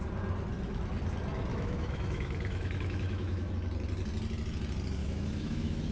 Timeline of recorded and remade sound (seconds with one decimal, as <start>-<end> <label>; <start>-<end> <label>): 0.0-1.5 recorded; 1.5-3.5 remade; 3.5-5.0 recorded; 5.0-5.9 remade